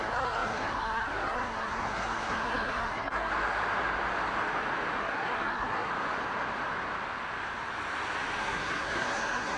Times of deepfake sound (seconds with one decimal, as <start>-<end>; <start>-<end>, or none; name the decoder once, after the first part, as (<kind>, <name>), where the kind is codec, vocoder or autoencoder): 0.0-3.3 (codec, SNAC); 5.0-5.9; 8.4-9.6